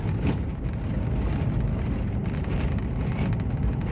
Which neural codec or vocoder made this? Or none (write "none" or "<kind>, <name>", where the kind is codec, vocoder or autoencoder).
none